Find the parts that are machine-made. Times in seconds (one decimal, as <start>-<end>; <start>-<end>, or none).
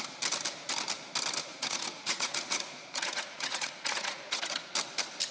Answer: 1.5-4.7